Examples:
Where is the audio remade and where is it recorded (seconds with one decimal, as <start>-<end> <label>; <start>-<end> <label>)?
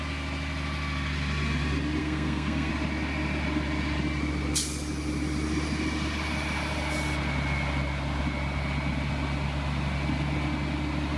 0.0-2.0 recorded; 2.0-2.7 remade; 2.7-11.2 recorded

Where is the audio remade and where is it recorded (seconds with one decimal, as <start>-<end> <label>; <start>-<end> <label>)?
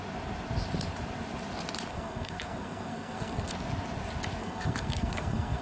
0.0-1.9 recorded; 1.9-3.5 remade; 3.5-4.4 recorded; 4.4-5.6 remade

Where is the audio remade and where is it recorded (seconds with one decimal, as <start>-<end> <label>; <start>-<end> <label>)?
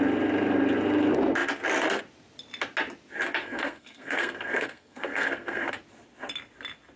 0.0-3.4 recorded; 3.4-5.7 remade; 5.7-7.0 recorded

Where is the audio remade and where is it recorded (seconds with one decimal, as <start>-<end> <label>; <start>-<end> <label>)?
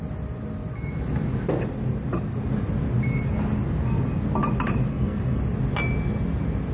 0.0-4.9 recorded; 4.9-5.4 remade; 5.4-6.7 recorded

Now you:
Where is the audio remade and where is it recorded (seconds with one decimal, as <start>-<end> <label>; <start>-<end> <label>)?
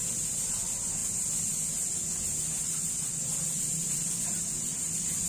0.0-5.3 recorded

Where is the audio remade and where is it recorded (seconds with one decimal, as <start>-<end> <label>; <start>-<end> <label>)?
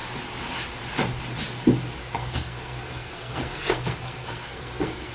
0.0-2.0 recorded; 2.0-5.1 remade